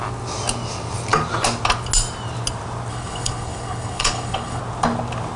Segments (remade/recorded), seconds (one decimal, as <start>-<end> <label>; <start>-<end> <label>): 0.0-2.9 recorded; 2.9-4.6 remade; 4.6-5.4 recorded

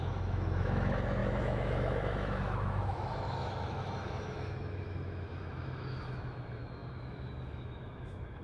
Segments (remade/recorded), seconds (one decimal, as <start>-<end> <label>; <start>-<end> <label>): 0.0-8.4 remade